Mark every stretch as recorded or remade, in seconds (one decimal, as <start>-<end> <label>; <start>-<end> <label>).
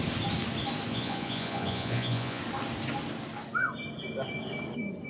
0.0-0.9 recorded; 0.9-2.4 remade; 2.4-5.1 recorded